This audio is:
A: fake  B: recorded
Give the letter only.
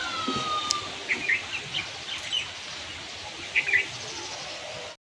B